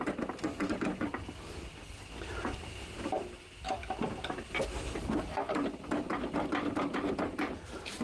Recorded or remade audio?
recorded